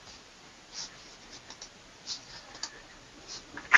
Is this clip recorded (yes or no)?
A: yes